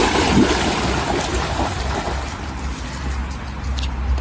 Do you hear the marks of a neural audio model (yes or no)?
no